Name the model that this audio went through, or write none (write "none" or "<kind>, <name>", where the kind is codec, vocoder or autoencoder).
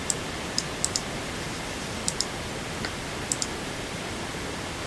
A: vocoder, BigVGAN v2